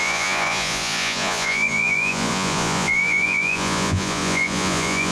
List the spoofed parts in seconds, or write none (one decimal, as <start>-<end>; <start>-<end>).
0.0-5.1